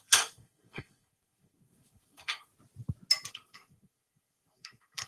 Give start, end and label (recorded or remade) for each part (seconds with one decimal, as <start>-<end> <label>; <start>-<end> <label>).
0.0-2.5 remade; 2.5-3.3 recorded; 3.3-5.1 remade